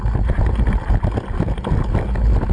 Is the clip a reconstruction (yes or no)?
no